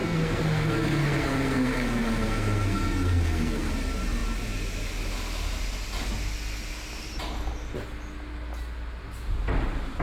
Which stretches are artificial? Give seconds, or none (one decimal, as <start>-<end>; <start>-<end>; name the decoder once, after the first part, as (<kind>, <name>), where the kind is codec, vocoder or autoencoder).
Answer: 0.0-3.7 (codec, SNAC)